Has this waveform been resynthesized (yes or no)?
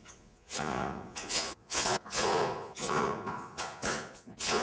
yes